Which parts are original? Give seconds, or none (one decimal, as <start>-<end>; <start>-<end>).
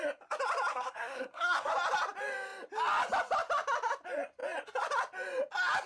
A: 0.0-0.7; 1.7-5.9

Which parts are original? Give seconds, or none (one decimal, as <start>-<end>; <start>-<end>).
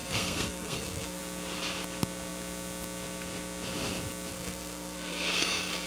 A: 1.2-4.3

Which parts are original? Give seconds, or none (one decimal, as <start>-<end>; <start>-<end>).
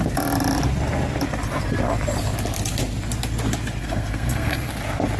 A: 0.0-3.8; 4.7-5.2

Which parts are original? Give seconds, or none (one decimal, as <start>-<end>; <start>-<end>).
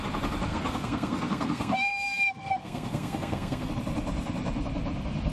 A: 0.0-0.5; 3.7-5.3